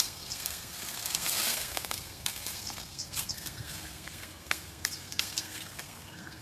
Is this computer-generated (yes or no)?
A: yes